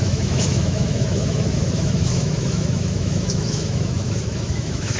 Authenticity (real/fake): fake